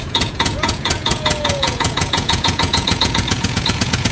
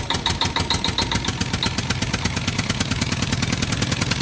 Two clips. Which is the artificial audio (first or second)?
first